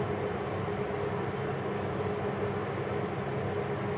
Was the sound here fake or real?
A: real